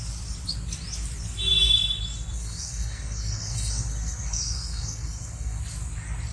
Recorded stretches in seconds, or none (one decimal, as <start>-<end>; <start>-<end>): 0.0-2.3; 5.6-6.3